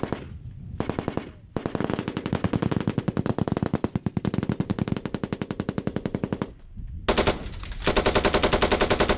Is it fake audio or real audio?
real